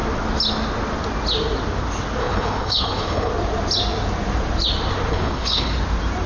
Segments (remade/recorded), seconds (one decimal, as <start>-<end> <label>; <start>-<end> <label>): 0.0-2.2 recorded; 2.2-3.3 remade; 3.3-5.1 recorded; 5.1-5.7 remade; 5.7-6.3 recorded